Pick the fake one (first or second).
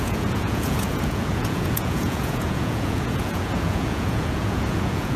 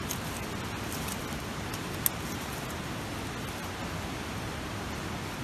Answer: first